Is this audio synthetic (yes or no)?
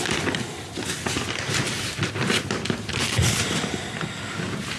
no